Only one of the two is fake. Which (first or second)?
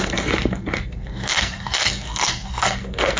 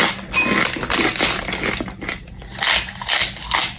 first